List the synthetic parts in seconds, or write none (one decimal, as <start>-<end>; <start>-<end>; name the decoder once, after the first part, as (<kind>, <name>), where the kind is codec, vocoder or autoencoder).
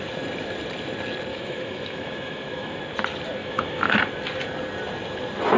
1.3-2.8 (autoencoder, DAC-VAE); 3.4-4.0